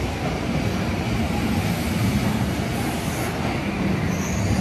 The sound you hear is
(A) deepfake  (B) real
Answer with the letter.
B